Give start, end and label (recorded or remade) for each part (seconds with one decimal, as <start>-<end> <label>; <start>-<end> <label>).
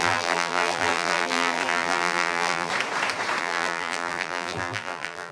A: 0.0-2.7 remade; 2.7-3.4 recorded; 3.4-5.3 remade